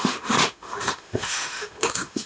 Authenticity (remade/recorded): remade